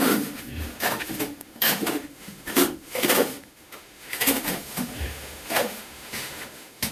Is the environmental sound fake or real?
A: fake